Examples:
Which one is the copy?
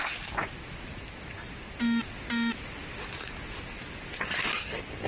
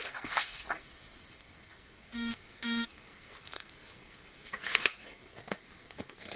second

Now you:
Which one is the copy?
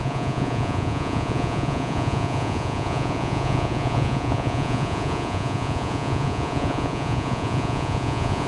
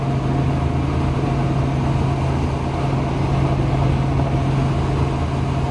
first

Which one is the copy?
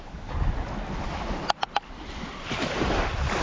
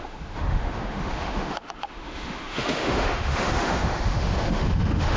second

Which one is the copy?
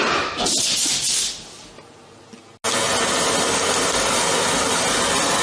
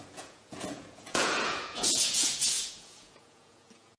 second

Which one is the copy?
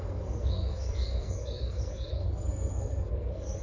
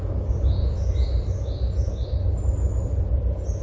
first